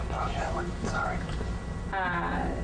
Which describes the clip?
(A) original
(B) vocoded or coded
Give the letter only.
A